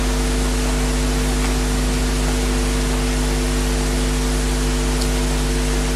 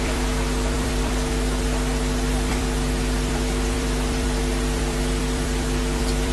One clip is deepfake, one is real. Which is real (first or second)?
first